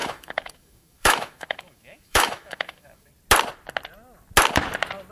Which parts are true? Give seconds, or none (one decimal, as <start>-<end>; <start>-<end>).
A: 3.1-5.1